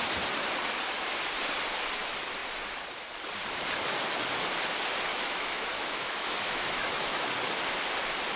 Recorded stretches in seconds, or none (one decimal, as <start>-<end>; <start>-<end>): 0.0-5.1; 7.3-8.4